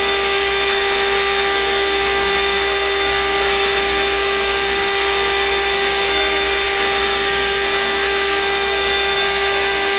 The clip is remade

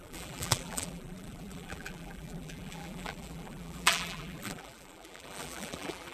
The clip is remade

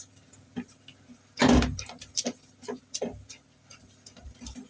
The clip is recorded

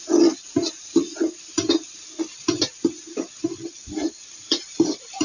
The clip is recorded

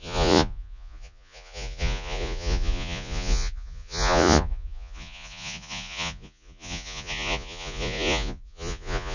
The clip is remade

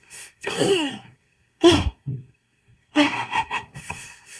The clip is remade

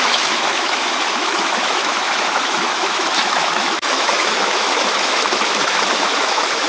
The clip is remade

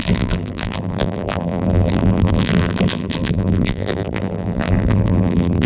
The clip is remade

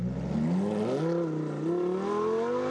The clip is recorded